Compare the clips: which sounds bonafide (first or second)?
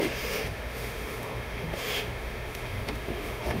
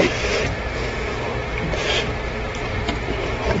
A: second